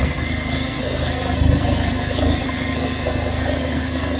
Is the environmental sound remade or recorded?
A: remade